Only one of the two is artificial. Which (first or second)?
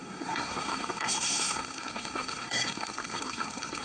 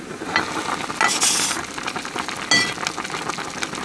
first